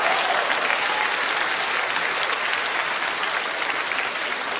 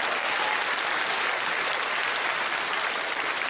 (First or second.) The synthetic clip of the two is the second